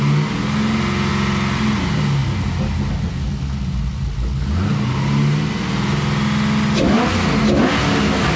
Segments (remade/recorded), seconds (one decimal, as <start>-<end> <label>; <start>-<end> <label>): 0.0-8.4 recorded